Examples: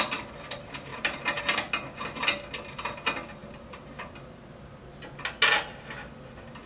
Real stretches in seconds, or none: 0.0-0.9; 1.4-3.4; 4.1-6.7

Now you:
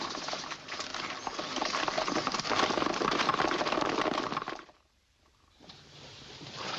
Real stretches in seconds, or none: 0.9-4.3

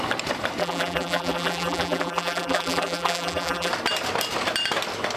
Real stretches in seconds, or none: 0.0-0.6; 3.7-5.2

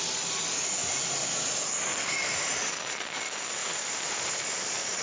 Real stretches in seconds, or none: 0.0-1.2; 2.6-3.6; 4.4-5.0

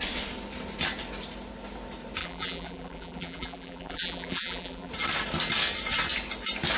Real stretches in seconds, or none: 0.0-2.2; 4.9-6.8